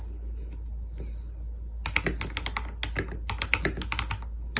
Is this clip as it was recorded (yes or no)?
yes